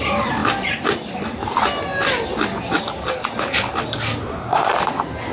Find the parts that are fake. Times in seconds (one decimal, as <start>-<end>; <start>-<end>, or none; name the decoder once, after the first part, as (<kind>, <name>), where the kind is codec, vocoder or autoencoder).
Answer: 4.2-4.7 (codec, SNAC)